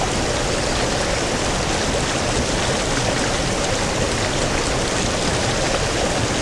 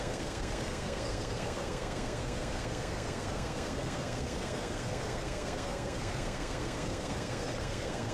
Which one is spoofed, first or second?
second